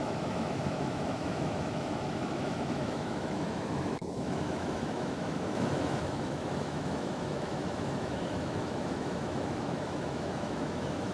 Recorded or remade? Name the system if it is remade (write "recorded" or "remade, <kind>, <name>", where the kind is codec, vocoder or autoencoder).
remade, autoencoder, DAC-VAE